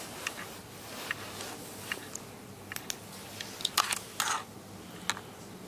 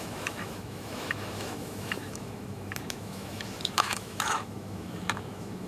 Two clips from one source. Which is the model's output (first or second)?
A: second